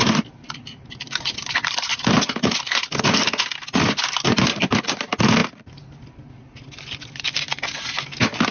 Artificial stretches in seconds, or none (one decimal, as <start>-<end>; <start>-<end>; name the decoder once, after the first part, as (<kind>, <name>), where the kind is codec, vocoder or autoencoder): none